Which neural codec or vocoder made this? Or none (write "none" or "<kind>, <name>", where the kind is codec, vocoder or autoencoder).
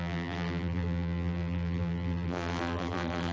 vocoder, BigVGAN v2